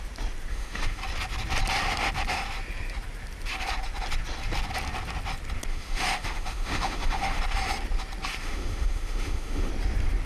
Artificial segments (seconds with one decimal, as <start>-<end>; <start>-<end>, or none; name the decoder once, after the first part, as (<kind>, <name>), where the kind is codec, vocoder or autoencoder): 0.5-1.0 (autoencoder, DAC-VAE); 5.7-7.4; 8.4-9.7